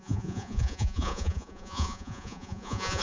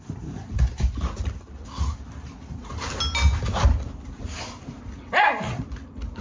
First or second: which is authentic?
second